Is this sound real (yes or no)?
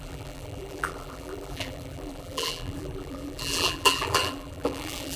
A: no